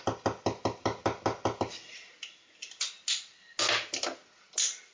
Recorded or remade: recorded